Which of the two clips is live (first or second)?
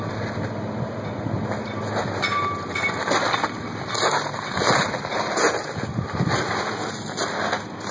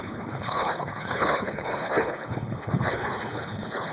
first